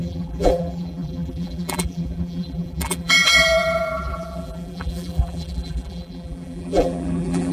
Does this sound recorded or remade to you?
remade